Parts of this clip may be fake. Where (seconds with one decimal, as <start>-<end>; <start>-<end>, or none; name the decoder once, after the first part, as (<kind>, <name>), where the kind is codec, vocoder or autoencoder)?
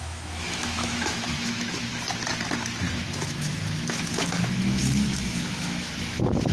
0.0-1.9 (autoencoder, DAC-VAE); 2.9-6.5